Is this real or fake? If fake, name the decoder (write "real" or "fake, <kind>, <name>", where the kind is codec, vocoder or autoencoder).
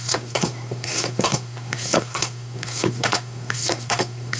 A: fake, codec, SNAC